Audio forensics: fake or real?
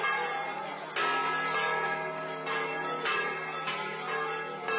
real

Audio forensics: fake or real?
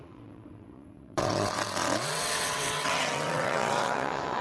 fake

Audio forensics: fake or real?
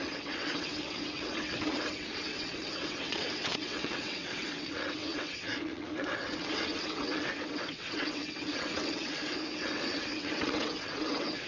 fake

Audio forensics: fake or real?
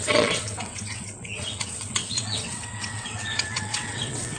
fake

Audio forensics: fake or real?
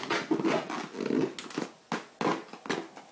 real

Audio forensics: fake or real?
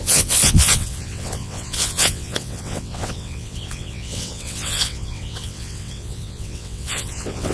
fake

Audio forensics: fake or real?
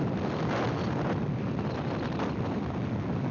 real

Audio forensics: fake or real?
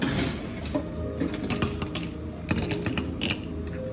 real